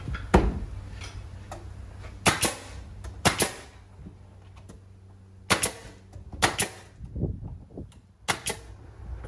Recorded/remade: recorded